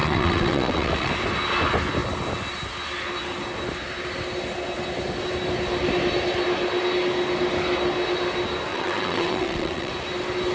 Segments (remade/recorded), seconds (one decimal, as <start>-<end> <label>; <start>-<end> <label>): 0.0-1.1 remade; 1.1-8.7 recorded; 8.7-9.9 remade; 9.9-10.5 recorded

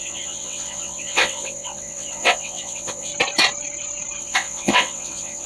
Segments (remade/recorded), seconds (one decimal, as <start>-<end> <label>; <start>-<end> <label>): 0.0-3.1 remade; 3.1-4.2 recorded; 4.2-5.5 remade

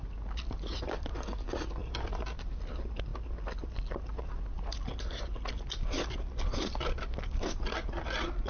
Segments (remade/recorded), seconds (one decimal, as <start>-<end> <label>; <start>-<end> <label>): 0.0-8.5 recorded

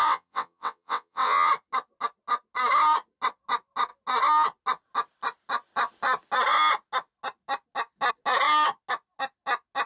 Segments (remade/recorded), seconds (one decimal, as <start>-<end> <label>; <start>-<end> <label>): 0.0-1.5 remade; 1.5-9.9 recorded

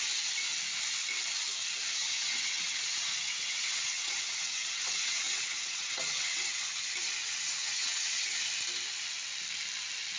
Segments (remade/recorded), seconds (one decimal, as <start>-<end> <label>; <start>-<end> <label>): 0.0-2.0 recorded; 2.0-6.6 remade; 6.6-7.2 recorded; 7.2-8.2 remade; 8.2-10.2 recorded

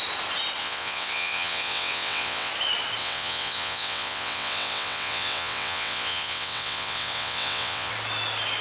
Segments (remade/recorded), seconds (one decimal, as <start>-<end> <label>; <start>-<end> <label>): 0.0-0.6 recorded; 0.6-2.5 remade; 2.5-3.0 recorded; 3.0-7.9 remade; 7.9-8.6 recorded

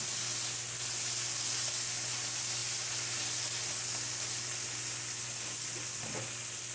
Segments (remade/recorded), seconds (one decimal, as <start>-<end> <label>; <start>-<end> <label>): 0.0-6.7 recorded

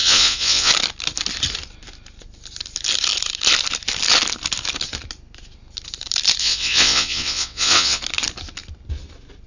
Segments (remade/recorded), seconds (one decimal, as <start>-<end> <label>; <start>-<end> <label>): 0.0-0.7 remade; 0.7-6.4 recorded; 6.4-8.0 remade; 8.0-9.5 recorded